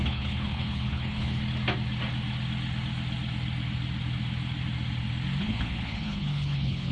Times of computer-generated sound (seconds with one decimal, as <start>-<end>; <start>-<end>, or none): 0.0-1.4; 5.4-6.9